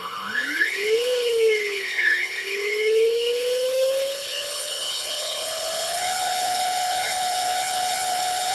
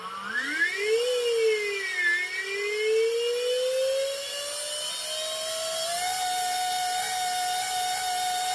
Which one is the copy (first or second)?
first